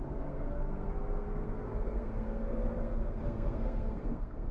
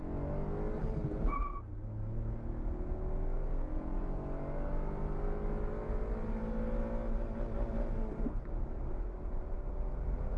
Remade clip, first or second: first